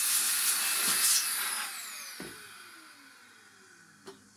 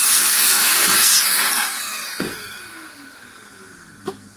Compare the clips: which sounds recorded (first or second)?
first